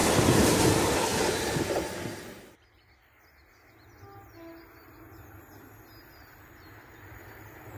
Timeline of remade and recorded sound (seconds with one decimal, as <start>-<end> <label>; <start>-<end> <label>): 0.0-7.8 recorded